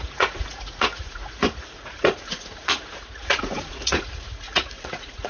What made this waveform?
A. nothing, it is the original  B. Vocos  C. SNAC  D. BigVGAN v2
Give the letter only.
B